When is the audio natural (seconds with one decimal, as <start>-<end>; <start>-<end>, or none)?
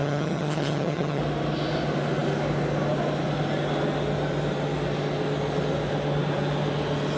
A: 1.2-7.2